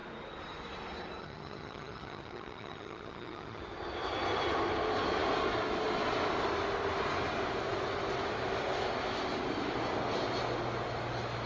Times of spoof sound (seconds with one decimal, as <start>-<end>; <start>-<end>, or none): 1.2-3.6